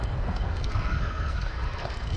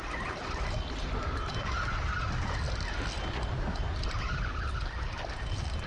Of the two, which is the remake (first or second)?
first